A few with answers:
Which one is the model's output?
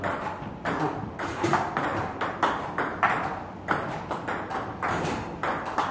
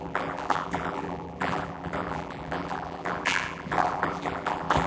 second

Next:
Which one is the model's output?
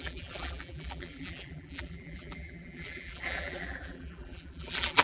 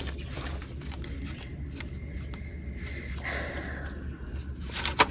first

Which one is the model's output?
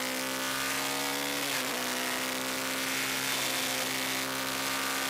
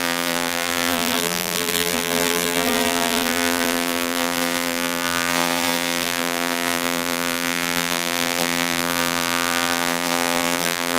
second